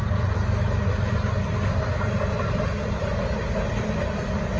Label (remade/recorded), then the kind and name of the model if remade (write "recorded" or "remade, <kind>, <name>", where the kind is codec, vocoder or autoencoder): recorded